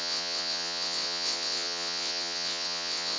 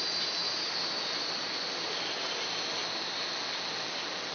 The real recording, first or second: second